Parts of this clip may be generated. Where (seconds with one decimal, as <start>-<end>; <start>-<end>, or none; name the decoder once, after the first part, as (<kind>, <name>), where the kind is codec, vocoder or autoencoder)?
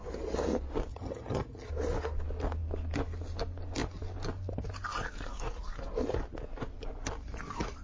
0.9-1.7 (vocoder, HiFi-GAN)